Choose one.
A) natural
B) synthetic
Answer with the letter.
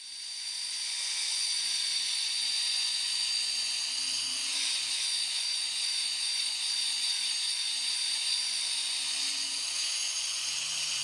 B